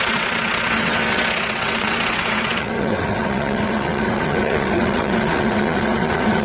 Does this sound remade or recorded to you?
remade